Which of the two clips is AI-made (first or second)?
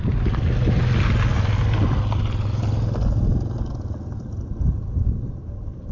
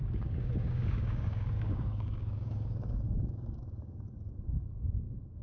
second